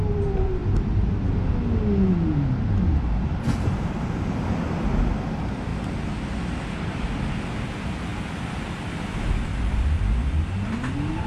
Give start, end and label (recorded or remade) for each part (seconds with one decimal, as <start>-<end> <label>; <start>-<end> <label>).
0.0-11.3 recorded

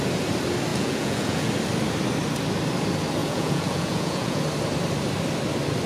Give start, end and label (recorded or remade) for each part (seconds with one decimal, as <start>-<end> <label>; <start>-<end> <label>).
0.0-0.7 recorded; 0.7-1.5 remade; 1.5-3.2 recorded; 3.2-4.4 remade; 4.4-5.9 recorded

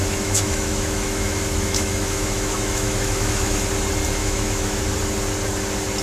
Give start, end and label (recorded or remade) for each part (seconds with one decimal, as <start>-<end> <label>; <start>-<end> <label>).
0.0-3.6 remade; 3.6-4.2 recorded; 4.2-4.8 remade; 4.8-6.0 recorded

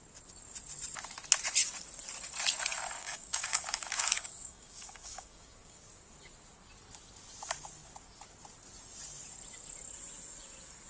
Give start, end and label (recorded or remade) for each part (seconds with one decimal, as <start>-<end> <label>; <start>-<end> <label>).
0.0-3.0 recorded; 3.0-5.9 remade; 5.9-10.9 recorded